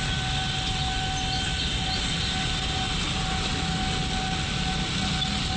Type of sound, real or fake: real